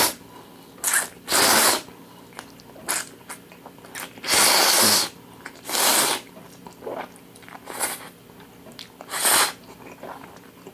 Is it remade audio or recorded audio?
recorded